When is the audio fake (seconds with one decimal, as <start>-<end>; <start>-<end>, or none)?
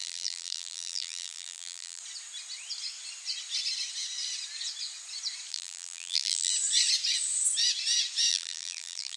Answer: 0.0-2.0; 5.5-6.5; 8.3-9.2